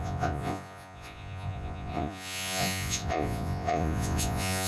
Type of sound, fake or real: fake